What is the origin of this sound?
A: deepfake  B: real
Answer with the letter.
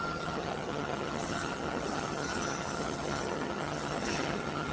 A